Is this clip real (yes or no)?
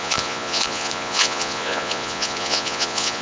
no